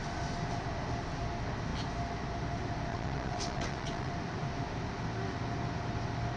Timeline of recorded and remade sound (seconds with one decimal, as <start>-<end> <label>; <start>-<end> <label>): 0.0-2.9 recorded; 2.9-4.1 remade; 4.1-6.4 recorded